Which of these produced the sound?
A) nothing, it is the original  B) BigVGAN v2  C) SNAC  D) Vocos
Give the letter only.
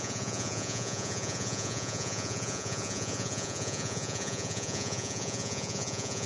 D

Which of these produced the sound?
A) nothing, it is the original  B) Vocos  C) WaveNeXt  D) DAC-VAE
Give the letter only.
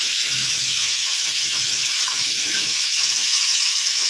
D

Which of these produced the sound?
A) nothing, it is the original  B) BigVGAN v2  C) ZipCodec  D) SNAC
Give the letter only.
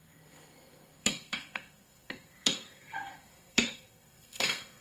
D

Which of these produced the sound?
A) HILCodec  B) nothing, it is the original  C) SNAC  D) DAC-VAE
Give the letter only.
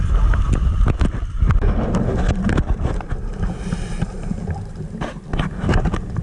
B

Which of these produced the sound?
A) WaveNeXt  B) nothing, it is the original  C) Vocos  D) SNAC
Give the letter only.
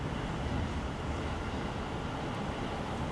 B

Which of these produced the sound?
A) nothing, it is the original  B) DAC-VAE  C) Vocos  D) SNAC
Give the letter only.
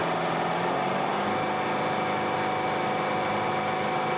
A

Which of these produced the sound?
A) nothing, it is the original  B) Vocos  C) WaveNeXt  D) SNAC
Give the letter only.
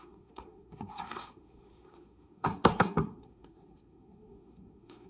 D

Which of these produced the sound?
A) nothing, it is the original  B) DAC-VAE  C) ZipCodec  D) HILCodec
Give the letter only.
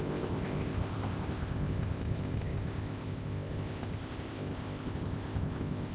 C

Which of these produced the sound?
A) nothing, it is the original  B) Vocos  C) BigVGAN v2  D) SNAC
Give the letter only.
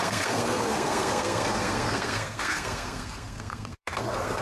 D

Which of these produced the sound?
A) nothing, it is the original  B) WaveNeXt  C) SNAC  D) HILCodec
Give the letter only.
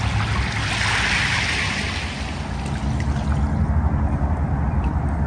A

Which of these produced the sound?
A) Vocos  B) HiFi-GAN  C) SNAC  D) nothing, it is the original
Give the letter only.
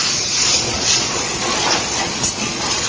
A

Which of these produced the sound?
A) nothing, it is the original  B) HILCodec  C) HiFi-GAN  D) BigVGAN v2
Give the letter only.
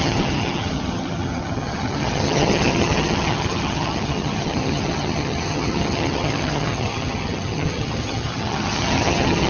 C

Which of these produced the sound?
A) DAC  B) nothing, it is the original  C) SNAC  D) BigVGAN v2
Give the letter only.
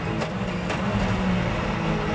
B